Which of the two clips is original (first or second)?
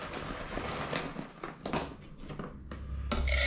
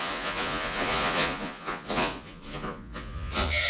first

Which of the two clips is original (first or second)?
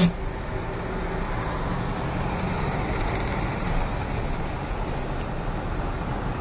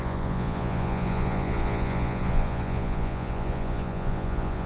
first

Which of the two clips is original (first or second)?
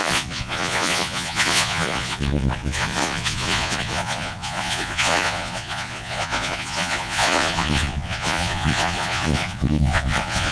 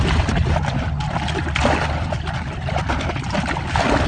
second